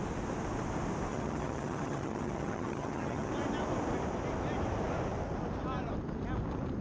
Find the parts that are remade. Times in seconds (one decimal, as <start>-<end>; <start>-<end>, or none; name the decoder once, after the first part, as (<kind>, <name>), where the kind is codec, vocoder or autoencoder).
1.1-3.3 (vocoder, HiFi-GAN)